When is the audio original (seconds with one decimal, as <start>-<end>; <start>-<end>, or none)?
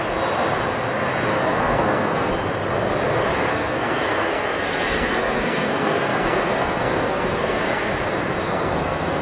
0.0-1.3; 2.3-3.5; 7.9-8.4